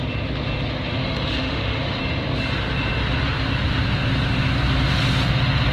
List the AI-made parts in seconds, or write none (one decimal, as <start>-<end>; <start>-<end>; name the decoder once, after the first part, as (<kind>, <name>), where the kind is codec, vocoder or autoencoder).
1.0-2.0 (autoencoder, DAC-VAE)